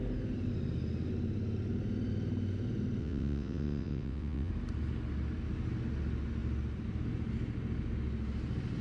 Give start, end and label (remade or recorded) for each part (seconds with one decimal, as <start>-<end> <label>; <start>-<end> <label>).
0.0-3.0 recorded; 3.0-4.5 remade; 4.5-8.8 recorded